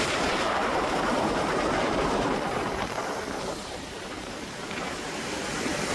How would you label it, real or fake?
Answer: fake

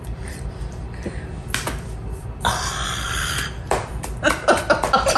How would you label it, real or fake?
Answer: fake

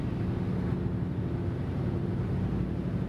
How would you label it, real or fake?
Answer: real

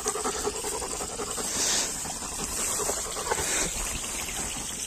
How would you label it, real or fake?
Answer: real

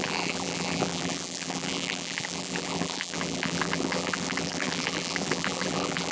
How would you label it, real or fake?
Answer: fake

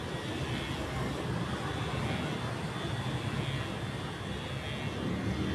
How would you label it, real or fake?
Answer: real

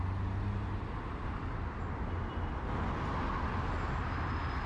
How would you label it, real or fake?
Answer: real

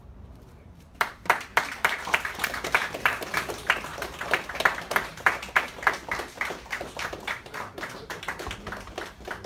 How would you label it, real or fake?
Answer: fake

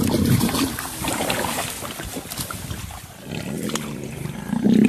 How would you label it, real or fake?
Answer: real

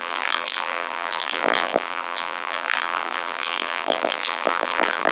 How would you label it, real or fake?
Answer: fake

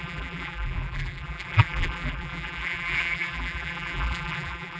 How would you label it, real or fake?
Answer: fake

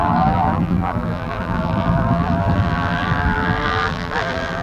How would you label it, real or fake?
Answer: fake